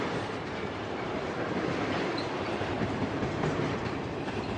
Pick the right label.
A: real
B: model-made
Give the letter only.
B